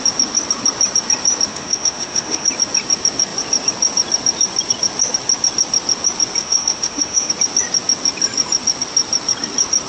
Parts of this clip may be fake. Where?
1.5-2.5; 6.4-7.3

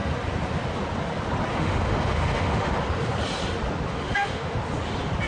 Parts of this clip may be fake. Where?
1.5-2.7; 3.9-4.6

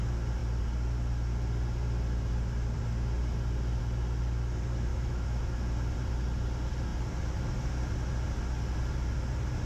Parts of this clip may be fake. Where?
4.9-5.4